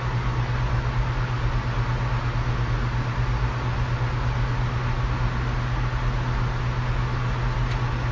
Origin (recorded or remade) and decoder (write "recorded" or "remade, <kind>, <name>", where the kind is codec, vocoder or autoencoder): recorded